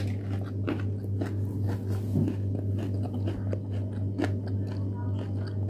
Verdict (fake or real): real